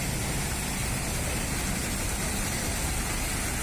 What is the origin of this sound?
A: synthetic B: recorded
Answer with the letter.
B